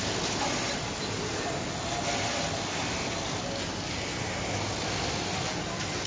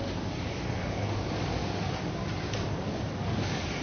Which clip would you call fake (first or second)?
second